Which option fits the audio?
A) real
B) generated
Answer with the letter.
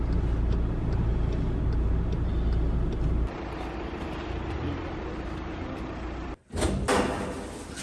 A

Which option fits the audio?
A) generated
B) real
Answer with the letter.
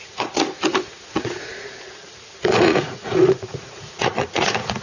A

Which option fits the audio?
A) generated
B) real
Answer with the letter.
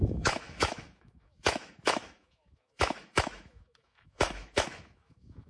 A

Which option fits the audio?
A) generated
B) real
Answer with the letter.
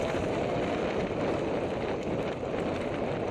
B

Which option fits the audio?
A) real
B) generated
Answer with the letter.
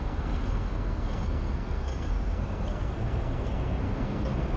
B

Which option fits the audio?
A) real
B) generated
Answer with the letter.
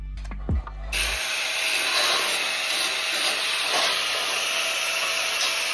A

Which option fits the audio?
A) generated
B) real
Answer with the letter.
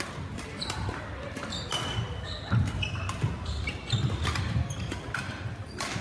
B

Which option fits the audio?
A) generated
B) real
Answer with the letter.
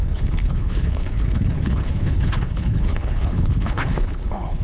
A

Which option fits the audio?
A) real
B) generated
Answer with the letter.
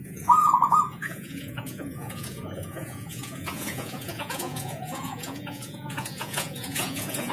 B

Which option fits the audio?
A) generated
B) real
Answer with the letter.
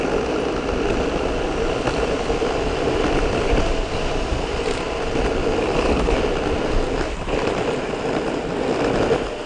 B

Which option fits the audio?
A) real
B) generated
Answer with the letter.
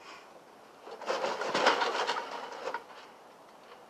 A